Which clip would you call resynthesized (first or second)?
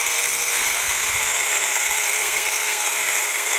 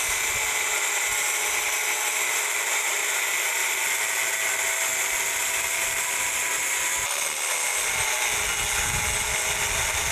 first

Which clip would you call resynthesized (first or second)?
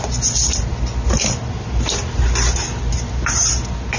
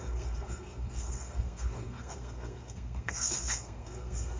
second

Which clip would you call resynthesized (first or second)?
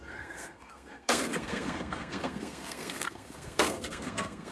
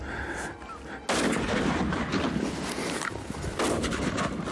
first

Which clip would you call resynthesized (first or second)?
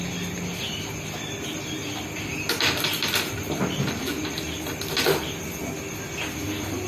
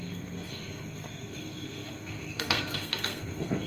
second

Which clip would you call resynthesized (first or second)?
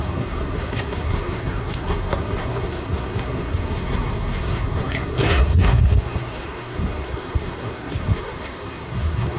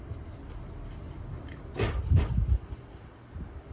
first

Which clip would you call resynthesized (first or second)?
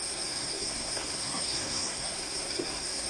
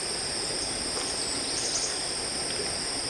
first